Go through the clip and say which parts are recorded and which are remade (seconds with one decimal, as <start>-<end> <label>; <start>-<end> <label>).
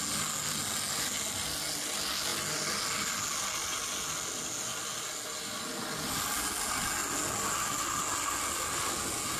0.0-9.4 recorded